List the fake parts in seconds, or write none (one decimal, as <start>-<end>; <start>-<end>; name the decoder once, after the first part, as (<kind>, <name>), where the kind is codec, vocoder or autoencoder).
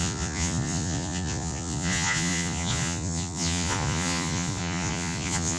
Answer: 0.0-5.6 (vocoder, Vocos)